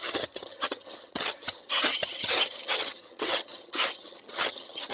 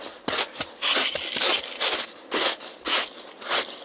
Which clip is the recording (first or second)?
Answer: second